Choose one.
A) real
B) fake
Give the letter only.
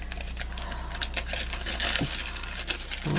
A